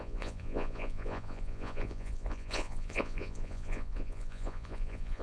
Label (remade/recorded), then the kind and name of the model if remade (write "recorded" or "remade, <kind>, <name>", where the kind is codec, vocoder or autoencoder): remade, vocoder, Vocos